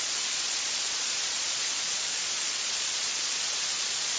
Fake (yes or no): yes